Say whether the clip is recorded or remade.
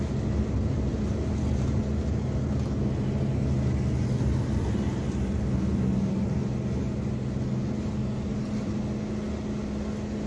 recorded